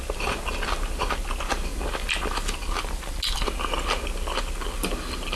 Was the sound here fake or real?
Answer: real